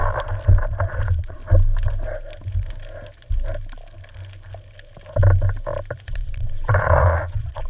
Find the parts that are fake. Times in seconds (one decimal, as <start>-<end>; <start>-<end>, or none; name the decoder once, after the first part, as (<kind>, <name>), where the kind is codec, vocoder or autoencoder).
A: 0.9-1.4 (vocoder, Vocos); 6.0-7.7